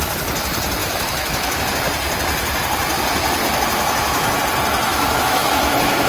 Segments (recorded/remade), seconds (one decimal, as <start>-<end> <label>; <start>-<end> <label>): 0.0-0.8 recorded; 0.8-1.6 remade; 1.6-3.4 recorded; 3.4-4.4 remade; 4.4-4.9 recorded; 4.9-6.1 remade